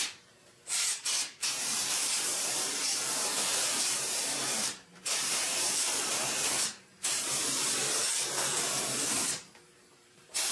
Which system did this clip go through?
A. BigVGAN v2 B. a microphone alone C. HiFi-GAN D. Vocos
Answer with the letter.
A